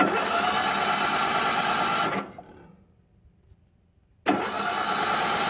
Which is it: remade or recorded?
recorded